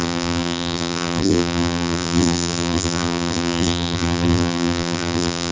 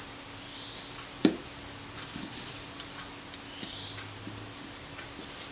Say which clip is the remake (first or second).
first